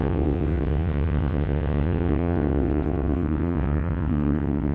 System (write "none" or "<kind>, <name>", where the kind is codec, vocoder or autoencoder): vocoder, WaveNeXt